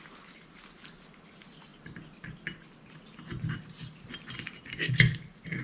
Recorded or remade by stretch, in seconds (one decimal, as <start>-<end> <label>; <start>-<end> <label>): 0.0-5.6 recorded